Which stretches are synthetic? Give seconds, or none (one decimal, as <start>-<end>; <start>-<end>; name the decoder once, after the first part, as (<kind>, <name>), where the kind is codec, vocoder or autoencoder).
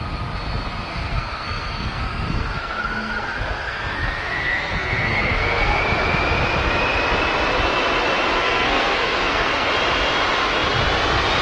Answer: 0.9-5.8 (codec, SNAC); 8.4-9.7